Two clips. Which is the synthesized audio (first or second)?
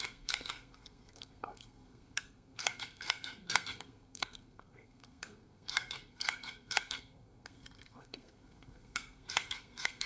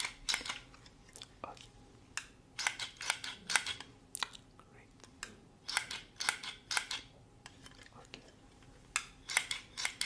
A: first